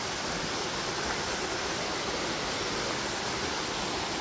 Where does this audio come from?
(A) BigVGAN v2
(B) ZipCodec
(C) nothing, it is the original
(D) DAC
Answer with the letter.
C